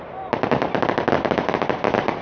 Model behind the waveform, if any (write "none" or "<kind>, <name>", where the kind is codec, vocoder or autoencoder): none